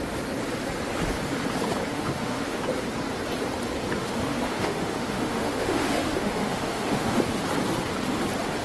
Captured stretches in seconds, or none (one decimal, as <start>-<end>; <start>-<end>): 0.0-1.9; 2.6-4.0; 7.2-8.6

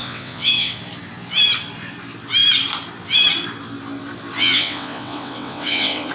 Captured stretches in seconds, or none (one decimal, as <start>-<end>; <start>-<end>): 0.8-4.4

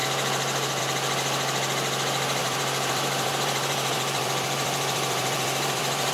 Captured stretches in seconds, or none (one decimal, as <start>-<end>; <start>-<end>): 0.0-2.4

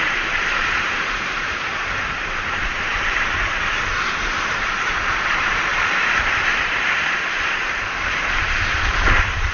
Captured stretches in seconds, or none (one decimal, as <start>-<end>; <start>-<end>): 5.7-6.3

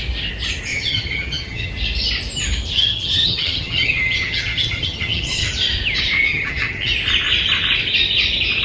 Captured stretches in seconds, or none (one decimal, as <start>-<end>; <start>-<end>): 0.0-0.7; 1.7-2.7; 5.5-6.3; 6.9-8.6

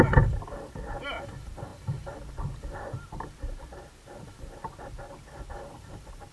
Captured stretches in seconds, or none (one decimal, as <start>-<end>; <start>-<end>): 0.0-6.3

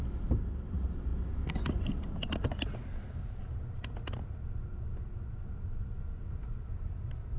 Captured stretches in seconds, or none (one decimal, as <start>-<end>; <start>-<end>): 0.0-7.4

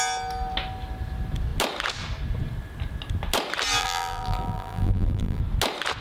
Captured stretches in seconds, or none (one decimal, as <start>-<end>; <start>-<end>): 0.0-3.8; 5.4-6.0